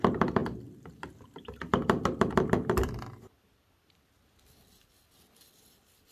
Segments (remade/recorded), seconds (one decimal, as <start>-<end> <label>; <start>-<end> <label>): 0.0-6.1 recorded